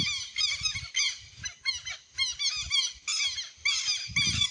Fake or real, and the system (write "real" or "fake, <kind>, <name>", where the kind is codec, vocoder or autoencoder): real